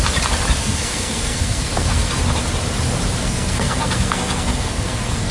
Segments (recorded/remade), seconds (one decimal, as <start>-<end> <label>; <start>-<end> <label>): 0.0-0.6 recorded; 0.6-2.2 remade; 2.2-3.2 recorded; 3.2-5.3 remade